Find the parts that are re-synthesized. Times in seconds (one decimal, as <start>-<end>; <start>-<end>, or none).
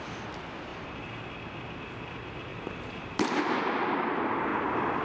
0.7-1.2; 2.5-3.4